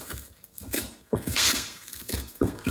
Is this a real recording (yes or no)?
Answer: no